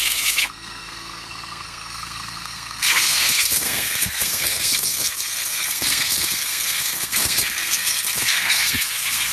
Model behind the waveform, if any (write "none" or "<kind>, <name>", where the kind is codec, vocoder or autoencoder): codec, SNAC